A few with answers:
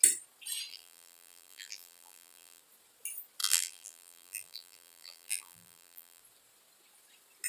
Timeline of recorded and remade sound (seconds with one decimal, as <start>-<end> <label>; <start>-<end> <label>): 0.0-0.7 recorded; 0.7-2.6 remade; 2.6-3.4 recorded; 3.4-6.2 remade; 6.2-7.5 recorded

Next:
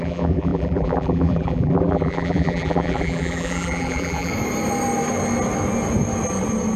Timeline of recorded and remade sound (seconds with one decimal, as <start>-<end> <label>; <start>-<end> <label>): 0.0-4.3 remade; 4.3-6.8 recorded

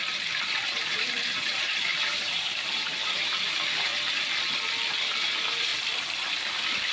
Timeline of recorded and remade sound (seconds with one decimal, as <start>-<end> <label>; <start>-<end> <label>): 0.0-3.9 remade; 3.9-4.9 recorded; 4.9-5.7 remade; 5.7-6.5 recorded; 6.5-6.9 remade

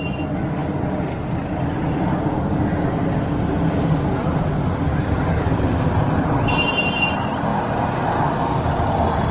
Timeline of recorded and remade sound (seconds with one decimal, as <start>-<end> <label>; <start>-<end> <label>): 0.0-4.1 recorded; 4.1-7.1 remade; 7.1-9.3 recorded